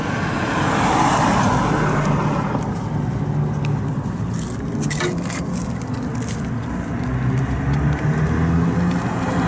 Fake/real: real